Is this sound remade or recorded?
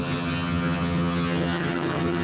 remade